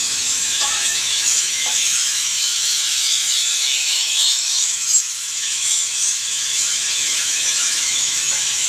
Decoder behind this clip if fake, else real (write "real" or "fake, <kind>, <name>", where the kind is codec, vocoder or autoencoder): fake, autoencoder, DAC-VAE